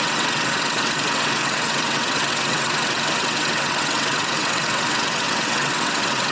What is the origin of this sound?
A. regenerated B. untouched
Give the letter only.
A